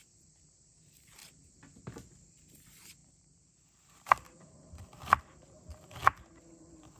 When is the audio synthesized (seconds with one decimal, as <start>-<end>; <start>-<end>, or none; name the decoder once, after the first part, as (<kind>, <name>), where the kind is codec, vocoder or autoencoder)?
0.0-1.2 (vocoder, BigVGAN v2); 2.3-6.0; 6.5-7.0